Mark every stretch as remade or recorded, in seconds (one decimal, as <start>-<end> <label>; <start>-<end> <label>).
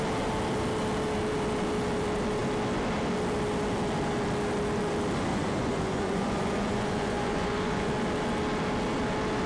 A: 0.0-5.3 recorded; 5.3-7.9 remade; 7.9-9.5 recorded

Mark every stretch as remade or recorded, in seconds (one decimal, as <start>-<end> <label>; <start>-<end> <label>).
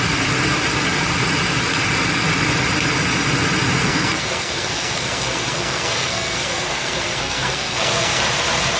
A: 0.0-3.8 recorded; 3.8-8.2 remade; 8.2-8.8 recorded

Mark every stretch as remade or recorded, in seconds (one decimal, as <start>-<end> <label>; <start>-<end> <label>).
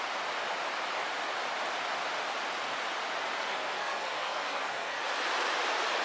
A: 0.0-3.5 recorded; 3.5-5.0 remade; 5.0-6.0 recorded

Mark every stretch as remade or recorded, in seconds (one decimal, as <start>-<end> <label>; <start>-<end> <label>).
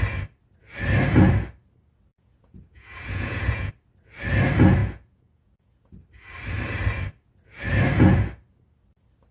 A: 0.0-2.1 recorded; 2.1-3.7 remade; 3.7-4.8 recorded; 4.8-5.9 remade; 5.9-9.3 recorded